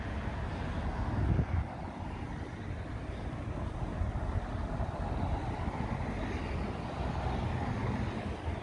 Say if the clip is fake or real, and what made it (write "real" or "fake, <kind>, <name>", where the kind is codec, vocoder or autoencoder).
real